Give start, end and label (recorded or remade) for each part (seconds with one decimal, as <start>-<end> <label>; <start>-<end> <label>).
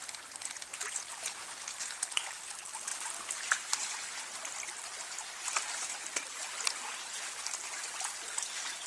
0.0-8.9 recorded